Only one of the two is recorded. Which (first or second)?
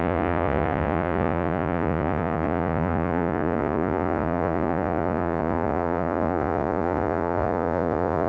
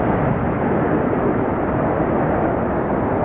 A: second